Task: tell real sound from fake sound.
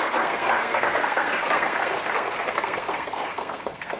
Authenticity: fake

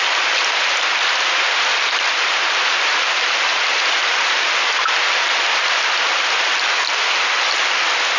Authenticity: real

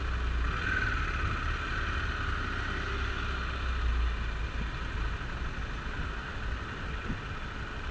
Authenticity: real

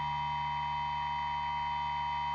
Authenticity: real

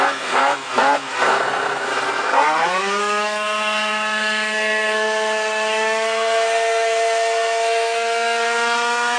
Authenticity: fake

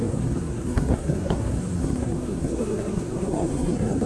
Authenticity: fake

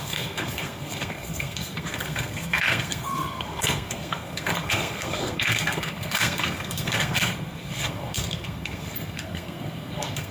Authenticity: fake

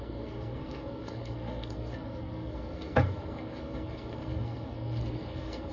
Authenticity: fake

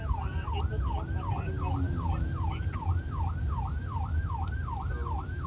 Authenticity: real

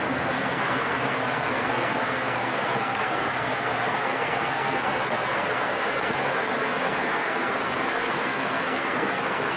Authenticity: fake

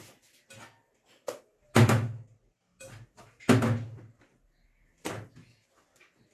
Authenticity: real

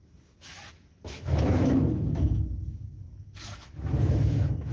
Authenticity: fake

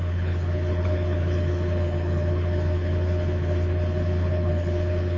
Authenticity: fake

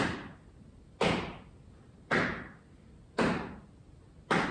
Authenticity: real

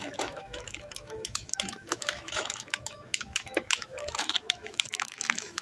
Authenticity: fake